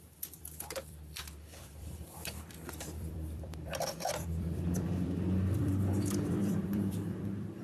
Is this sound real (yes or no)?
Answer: no